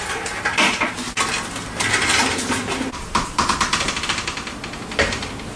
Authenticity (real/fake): real